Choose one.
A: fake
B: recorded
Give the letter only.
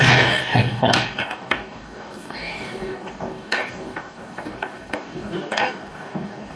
A